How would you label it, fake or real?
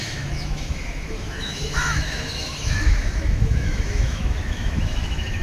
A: fake